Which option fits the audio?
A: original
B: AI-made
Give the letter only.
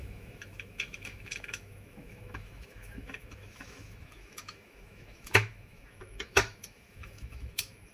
B